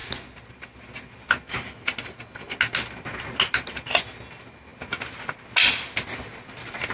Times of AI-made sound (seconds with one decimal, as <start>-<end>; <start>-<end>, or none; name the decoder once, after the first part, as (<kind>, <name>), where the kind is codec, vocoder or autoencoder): none